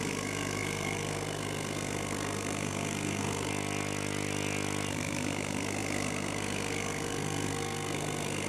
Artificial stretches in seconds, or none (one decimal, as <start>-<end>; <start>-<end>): 0.0-3.5; 4.9-8.5